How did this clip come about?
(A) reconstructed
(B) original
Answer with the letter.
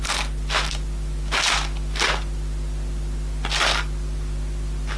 B